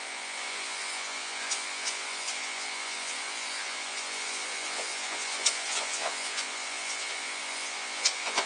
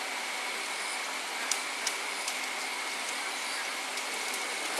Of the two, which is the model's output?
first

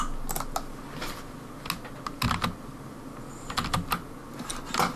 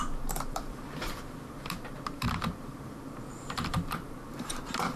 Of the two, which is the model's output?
second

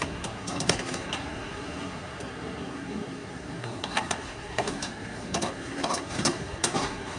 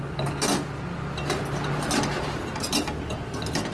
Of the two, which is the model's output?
first